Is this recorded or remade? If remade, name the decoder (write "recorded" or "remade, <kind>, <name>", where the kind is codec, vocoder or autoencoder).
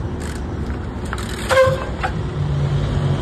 recorded